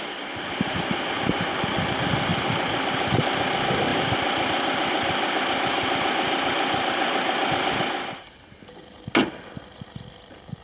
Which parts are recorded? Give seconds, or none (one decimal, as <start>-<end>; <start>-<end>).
0.0-2.3; 3.2-3.9; 7.5-10.6